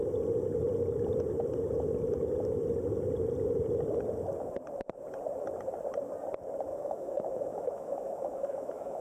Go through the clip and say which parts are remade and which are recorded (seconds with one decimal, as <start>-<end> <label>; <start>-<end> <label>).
0.0-6.7 recorded; 6.7-9.0 remade